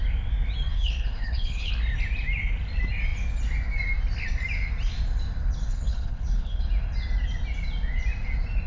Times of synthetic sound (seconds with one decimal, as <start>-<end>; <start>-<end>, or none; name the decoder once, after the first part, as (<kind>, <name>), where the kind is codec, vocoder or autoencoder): 0.7-1.7 (codec, HILCodec); 5.7-6.7